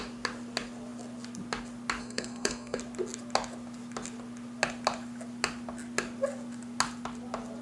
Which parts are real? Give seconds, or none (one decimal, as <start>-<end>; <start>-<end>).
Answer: 0.0-2.0; 2.8-7.6